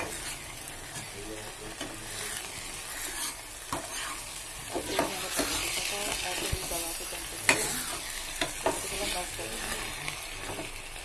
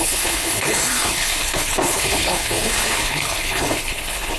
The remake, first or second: second